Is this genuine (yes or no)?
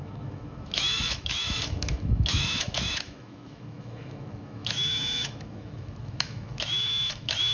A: no